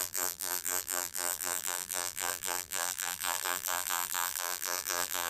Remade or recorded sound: remade